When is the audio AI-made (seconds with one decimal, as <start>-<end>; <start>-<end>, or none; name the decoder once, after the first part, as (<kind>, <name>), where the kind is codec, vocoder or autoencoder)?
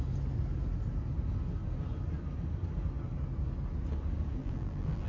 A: 4.4-5.1 (vocoder, BigVGAN v2)